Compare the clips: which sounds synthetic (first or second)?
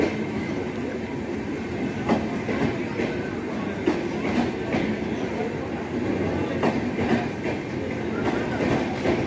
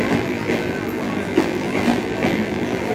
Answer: second